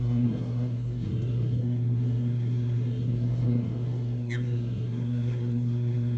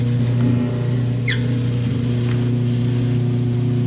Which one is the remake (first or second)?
first